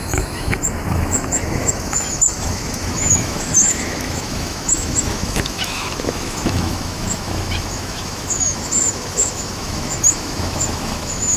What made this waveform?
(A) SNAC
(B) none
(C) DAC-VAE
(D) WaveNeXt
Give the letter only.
C